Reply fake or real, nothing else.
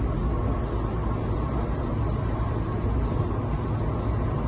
real